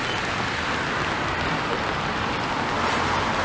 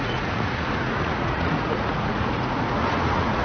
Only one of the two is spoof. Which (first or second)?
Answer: second